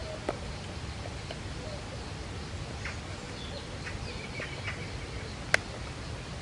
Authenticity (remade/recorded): recorded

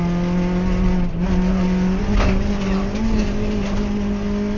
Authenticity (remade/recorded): recorded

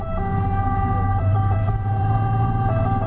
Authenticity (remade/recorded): remade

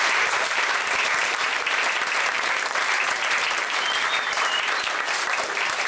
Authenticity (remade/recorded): remade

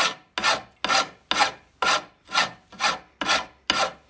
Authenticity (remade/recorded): recorded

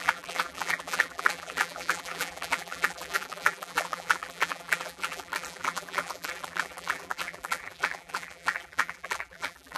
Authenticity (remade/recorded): remade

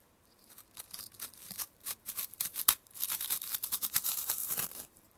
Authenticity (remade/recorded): remade